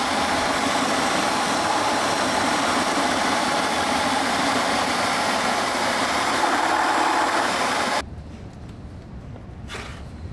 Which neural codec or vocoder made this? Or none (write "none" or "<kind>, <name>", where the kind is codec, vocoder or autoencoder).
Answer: vocoder, BigVGAN v2